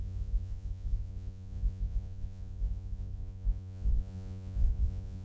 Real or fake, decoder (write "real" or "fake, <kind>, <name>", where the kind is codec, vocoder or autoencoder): fake, vocoder, Vocos